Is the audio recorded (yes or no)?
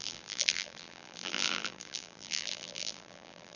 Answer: no